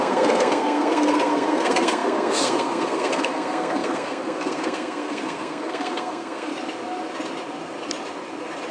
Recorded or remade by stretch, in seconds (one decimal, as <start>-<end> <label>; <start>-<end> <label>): 0.0-6.5 remade; 6.5-8.7 recorded